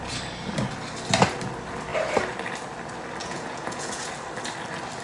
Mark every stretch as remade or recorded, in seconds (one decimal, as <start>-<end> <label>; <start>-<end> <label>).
0.0-3.2 recorded; 3.2-4.1 remade; 4.1-5.0 recorded